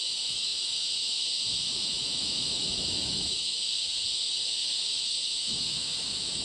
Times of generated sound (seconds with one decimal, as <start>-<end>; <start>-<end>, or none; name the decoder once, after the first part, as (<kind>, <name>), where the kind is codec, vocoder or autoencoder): 0.0-6.4 (autoencoder, DAC-VAE)